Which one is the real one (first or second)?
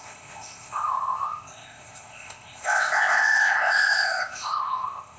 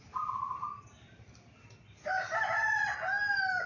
second